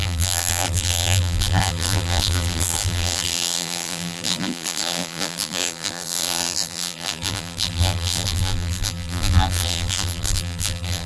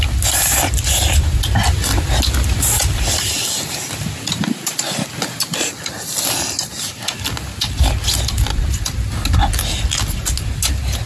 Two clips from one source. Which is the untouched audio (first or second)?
second